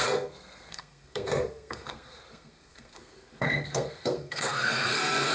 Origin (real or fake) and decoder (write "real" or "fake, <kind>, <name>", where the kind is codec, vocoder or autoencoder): fake, codec, SNAC